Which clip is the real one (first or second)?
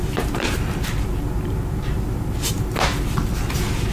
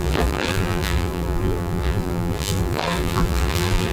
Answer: first